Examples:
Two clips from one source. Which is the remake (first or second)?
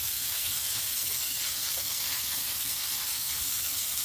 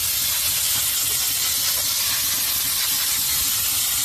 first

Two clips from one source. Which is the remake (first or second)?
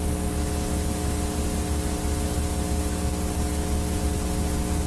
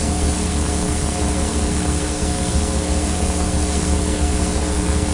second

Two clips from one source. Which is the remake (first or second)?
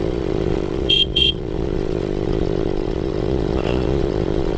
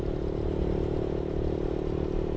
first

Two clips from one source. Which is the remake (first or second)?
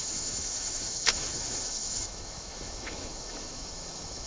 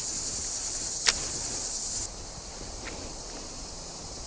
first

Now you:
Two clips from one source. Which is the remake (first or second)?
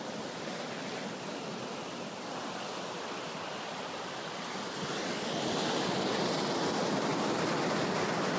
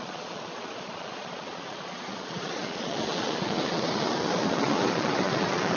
second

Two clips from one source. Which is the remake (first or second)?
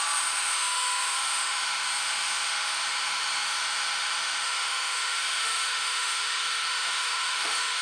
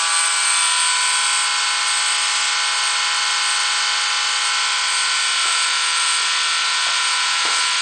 first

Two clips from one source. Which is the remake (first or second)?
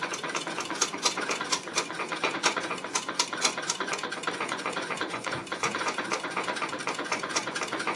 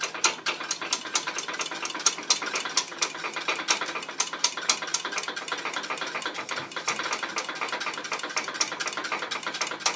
first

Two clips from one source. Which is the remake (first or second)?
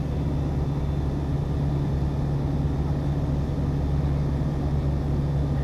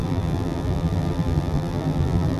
second